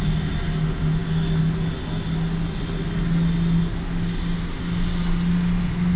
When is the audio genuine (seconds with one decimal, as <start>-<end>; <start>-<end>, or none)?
0.0-6.0